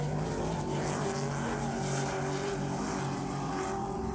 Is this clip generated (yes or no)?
no